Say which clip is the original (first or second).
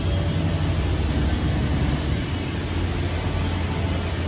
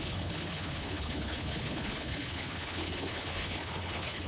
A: first